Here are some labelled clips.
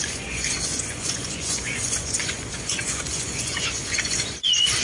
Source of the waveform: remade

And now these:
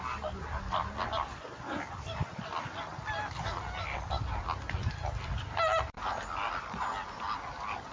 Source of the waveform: recorded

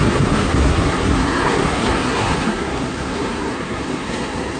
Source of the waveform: remade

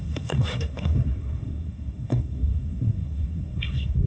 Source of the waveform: remade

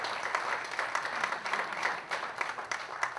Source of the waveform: recorded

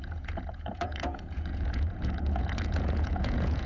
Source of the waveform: remade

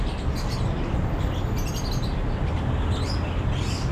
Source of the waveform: recorded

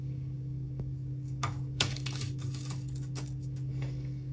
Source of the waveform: remade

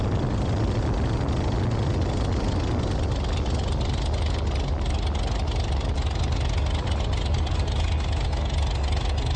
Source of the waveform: recorded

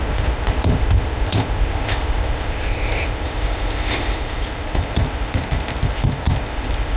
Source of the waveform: remade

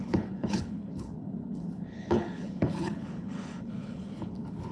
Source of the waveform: remade